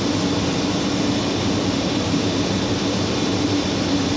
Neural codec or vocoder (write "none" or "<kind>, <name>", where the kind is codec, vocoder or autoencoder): none